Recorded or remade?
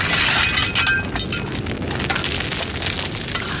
recorded